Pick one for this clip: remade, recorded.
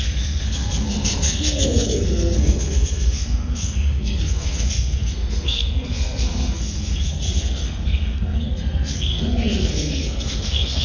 remade